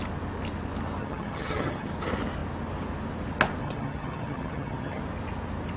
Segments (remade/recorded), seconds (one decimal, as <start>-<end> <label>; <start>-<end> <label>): 0.0-1.0 recorded; 1.0-1.9 remade; 1.9-3.6 recorded; 3.6-5.0 remade; 5.0-5.8 recorded